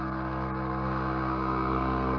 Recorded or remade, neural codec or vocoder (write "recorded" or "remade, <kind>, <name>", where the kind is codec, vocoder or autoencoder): remade, codec, SNAC